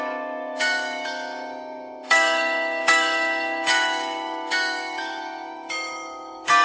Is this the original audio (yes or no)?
no